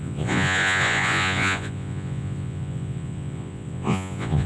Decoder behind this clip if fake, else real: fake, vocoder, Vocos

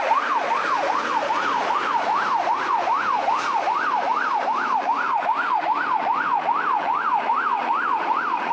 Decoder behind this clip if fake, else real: fake, vocoder, Vocos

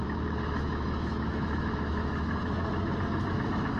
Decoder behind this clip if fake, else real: fake, autoencoder, DAC-VAE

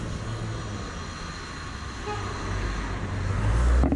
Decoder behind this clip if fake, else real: real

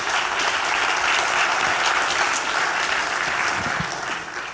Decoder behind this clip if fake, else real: real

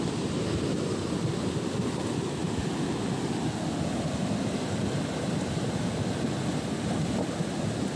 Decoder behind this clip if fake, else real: real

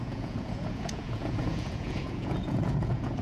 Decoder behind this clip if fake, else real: fake, vocoder, Vocos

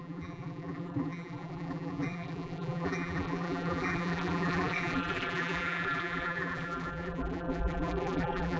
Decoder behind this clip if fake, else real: fake, vocoder, BigVGAN v2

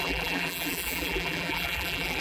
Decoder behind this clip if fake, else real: fake, vocoder, BigVGAN v2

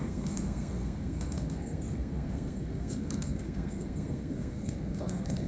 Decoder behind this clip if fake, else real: fake, codec, SNAC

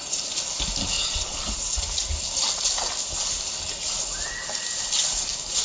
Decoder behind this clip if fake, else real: real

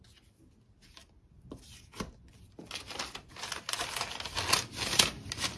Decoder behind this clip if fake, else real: real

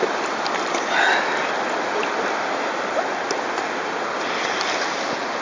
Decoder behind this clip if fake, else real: real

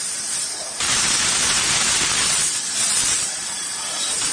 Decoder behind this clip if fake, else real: real